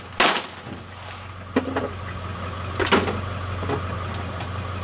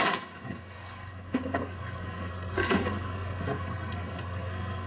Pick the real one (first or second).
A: first